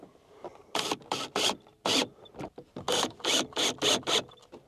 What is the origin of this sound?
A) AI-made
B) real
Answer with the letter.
B